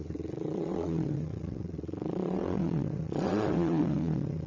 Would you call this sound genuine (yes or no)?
no